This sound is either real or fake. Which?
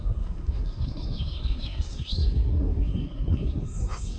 fake